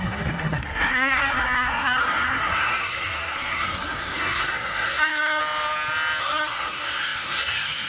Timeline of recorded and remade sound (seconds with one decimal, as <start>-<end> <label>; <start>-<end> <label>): 0.0-5.4 remade; 5.4-6.2 recorded; 6.2-7.9 remade